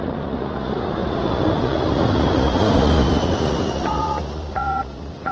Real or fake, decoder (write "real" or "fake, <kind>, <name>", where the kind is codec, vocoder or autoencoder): fake, vocoder, Vocos